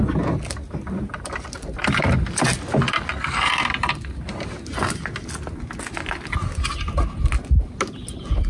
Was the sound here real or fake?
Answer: real